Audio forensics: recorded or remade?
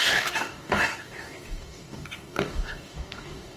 remade